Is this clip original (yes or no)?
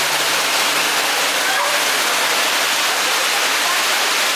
yes